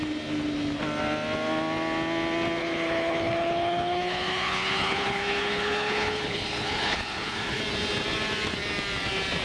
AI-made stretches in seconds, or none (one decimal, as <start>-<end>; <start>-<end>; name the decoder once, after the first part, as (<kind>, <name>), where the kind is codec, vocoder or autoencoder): 2.6-7.6 (codec, HILCodec)